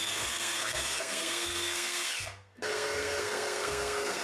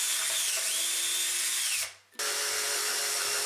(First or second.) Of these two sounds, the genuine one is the second